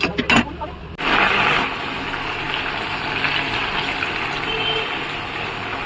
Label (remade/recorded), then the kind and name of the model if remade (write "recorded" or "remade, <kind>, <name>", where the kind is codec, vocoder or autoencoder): recorded